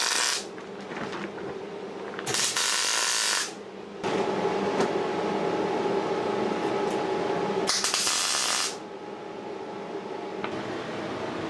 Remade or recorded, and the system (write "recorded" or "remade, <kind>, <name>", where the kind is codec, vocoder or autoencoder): recorded